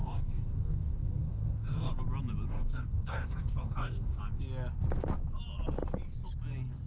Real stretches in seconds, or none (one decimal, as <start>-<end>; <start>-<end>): 1.9-2.5; 4.2-6.9